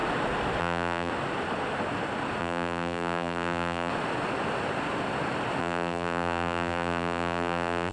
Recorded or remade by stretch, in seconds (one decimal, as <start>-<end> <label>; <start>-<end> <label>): 0.0-0.6 recorded; 0.6-1.1 remade; 1.1-2.4 recorded; 2.4-3.9 remade; 3.9-5.6 recorded; 5.6-7.9 remade